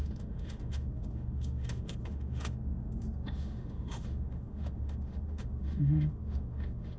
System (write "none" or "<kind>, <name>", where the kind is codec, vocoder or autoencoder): autoencoder, DAC-VAE